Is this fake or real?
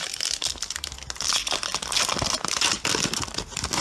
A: real